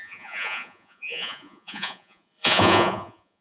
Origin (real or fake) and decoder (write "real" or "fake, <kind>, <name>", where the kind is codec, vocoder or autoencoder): fake, vocoder, Vocos